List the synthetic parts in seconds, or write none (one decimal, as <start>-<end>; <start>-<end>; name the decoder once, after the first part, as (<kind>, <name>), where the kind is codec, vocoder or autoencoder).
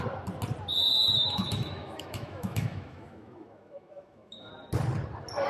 1.2-4.5 (autoencoder, DAC-VAE)